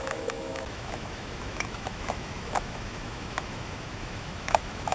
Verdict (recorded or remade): remade